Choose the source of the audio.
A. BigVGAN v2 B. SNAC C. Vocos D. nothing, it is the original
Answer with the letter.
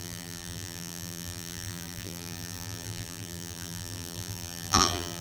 A